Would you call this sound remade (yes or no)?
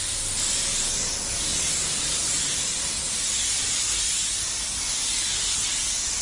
no